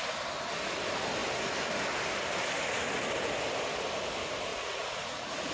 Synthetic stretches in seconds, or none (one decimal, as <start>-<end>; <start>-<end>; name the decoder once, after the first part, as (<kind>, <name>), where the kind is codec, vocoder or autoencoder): 4.5-5.5 (vocoder, Vocos)